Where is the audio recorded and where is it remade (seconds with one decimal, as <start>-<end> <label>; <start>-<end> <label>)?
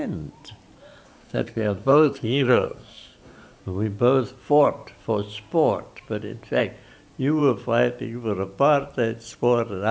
0.0-1.1 recorded; 1.1-3.6 remade; 3.6-9.9 recorded